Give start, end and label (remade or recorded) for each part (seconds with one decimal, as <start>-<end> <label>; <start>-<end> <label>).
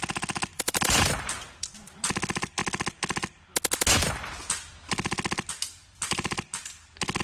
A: 0.0-0.5 recorded; 0.5-2.1 remade; 2.1-7.2 recorded